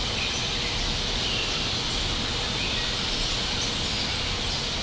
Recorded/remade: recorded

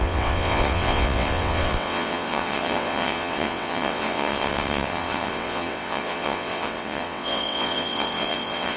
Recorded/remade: remade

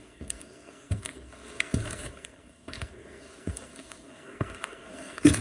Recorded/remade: remade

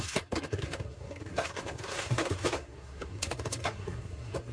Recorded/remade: remade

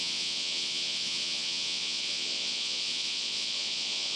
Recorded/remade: remade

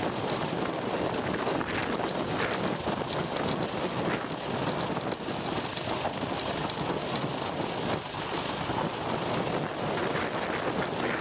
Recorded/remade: recorded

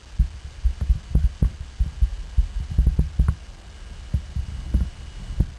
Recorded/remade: recorded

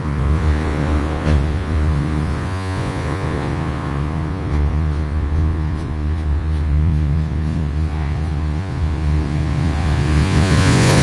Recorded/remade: remade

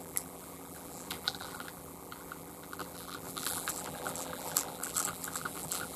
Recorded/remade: remade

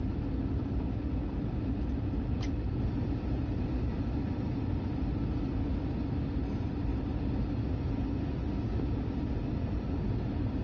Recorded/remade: recorded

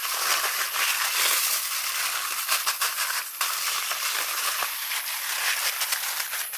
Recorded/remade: recorded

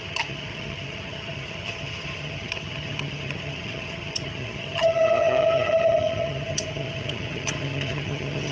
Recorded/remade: remade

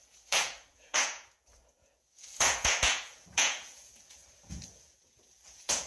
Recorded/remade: remade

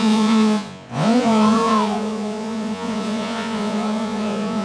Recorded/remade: remade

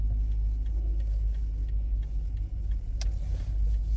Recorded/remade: recorded